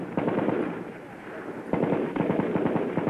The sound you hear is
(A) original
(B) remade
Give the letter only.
B